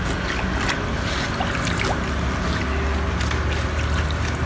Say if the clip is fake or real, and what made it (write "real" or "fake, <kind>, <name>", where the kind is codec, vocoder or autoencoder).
real